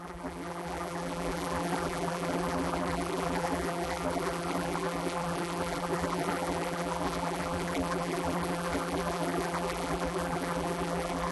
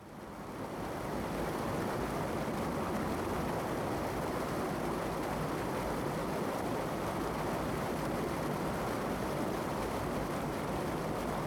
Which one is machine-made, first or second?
first